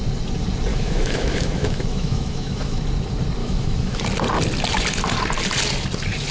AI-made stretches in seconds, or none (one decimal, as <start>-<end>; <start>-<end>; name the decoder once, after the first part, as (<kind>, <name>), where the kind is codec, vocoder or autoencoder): 0.7-2.8 (autoencoder, DAC-VAE); 3.4-4.0